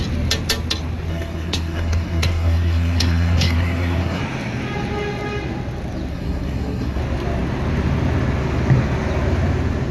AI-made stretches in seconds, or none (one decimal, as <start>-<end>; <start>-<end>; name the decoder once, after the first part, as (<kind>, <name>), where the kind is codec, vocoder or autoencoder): 1.1-4.2 (codec, SNAC); 6.1-7.0